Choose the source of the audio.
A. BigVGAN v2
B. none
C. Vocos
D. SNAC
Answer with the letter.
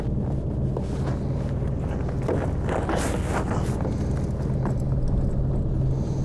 B